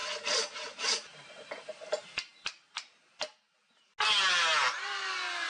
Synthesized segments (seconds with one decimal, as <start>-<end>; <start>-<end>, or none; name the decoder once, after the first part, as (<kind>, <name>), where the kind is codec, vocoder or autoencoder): 0.0-2.3 (vocoder, BigVGAN v2)